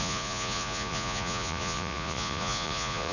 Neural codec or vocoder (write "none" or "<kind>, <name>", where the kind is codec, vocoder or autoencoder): vocoder, Vocos